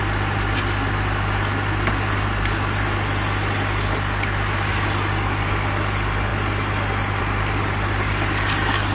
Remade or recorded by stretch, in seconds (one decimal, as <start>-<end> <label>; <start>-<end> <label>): 0.0-8.9 recorded